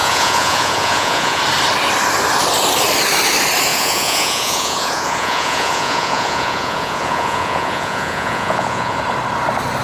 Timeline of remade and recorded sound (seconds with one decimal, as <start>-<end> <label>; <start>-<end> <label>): 0.0-1.4 remade; 1.4-3.7 recorded; 3.7-9.0 remade; 9.0-9.8 recorded